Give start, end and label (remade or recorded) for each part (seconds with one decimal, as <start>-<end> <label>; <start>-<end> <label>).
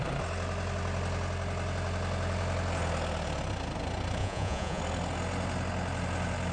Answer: 0.0-4.2 recorded; 4.2-4.8 remade; 4.8-6.5 recorded